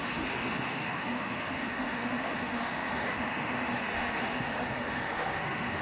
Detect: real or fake fake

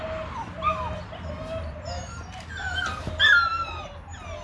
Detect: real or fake real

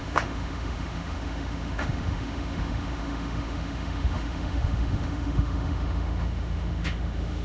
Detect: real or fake fake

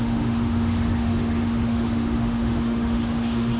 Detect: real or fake fake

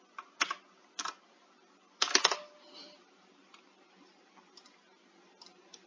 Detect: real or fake real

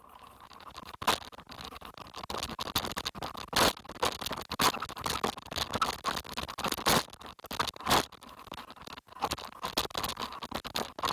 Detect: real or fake real